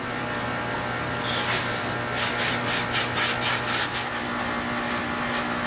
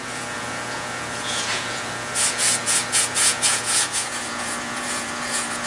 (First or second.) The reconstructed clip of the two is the second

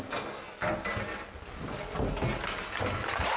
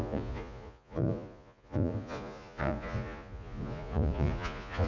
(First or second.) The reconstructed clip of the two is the second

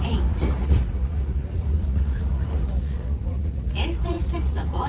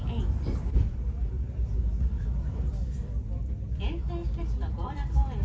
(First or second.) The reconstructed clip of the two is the first